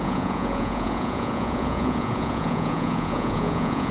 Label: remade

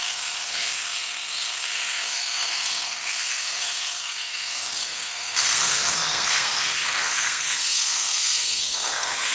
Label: remade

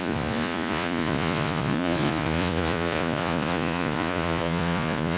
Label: remade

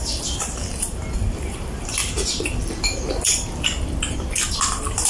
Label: remade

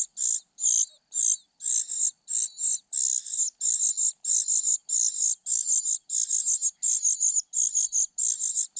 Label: recorded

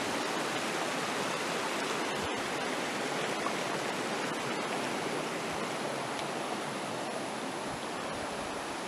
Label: recorded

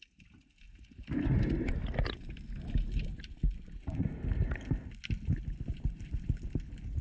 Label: recorded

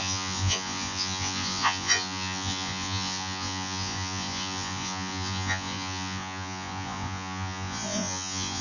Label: remade